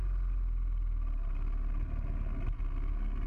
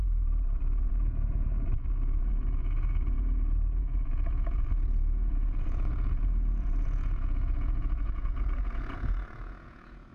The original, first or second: first